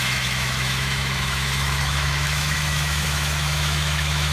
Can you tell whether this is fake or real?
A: fake